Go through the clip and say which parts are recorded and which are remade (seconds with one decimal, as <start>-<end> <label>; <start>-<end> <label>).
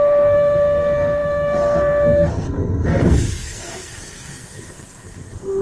0.0-5.6 remade